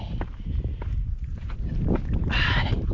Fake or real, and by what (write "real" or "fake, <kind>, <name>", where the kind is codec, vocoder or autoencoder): real